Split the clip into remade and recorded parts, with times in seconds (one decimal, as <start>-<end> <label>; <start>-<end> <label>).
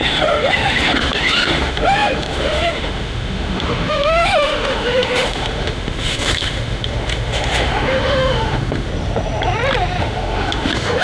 0.0-8.9 remade; 8.9-10.0 recorded; 10.0-11.0 remade